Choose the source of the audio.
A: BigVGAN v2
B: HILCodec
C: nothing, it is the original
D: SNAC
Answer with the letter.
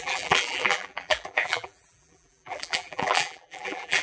A